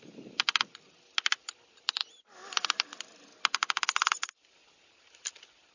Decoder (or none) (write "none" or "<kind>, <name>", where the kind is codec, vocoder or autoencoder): none